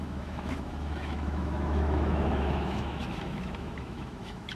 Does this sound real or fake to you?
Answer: fake